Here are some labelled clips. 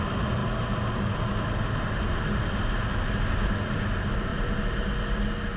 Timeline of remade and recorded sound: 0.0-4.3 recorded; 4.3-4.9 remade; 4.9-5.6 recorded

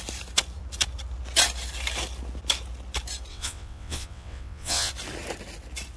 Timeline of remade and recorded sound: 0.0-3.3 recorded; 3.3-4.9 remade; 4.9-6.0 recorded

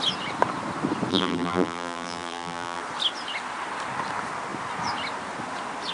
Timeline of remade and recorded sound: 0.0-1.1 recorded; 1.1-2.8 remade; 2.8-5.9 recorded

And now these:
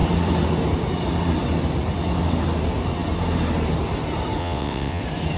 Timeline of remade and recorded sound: 0.0-4.4 recorded; 4.4-5.0 remade; 5.0-5.4 recorded